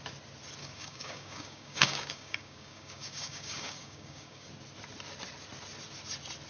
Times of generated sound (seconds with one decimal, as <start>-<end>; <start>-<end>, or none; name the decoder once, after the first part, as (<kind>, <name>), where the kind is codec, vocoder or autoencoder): 0.6-4.5 (codec, DAC)